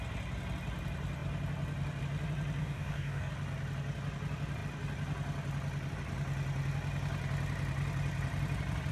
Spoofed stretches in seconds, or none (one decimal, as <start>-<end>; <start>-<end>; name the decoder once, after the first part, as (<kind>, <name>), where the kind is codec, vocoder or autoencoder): 2.6-3.3 (codec, DAC)